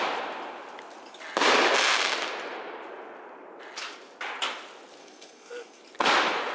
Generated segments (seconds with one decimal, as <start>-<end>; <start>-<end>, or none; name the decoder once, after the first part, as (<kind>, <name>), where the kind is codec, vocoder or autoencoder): 5.0-5.8 (codec, SNAC)